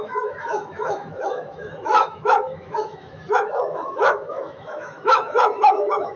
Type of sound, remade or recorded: remade